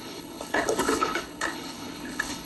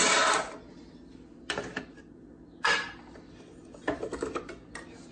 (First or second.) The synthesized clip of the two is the first